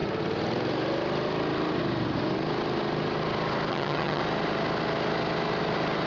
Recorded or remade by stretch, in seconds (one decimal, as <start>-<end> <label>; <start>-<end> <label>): 0.0-3.7 recorded; 3.7-4.2 remade; 4.2-6.1 recorded